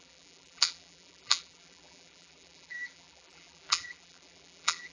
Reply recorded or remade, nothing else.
remade